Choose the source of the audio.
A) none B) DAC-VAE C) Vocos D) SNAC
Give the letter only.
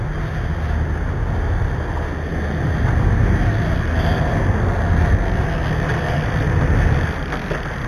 A